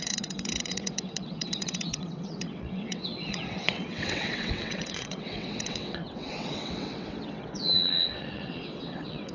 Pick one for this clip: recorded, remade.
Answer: remade